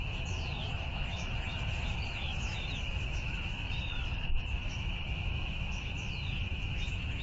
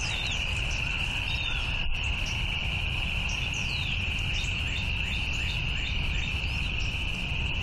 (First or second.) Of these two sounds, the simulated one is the first